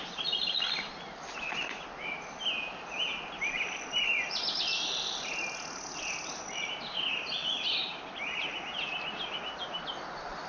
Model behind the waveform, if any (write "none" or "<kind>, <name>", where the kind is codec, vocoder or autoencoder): none